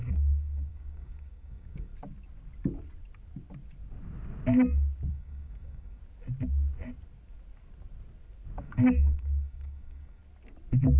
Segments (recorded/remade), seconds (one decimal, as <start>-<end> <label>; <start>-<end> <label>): 0.0-1.9 remade; 1.9-5.1 recorded; 5.1-6.0 remade; 6.0-8.6 recorded; 8.6-10.2 remade; 10.2-11.0 recorded